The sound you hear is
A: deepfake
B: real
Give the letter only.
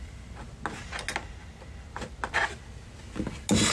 B